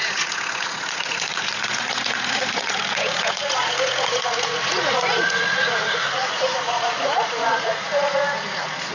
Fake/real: fake